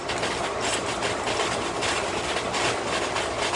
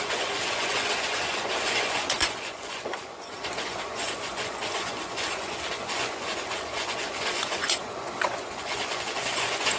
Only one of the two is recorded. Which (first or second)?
first